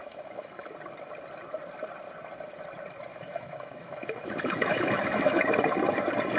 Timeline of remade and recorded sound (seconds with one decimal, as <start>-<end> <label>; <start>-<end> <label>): 0.0-0.7 remade; 0.7-3.1 recorded; 3.1-5.4 remade; 5.4-6.4 recorded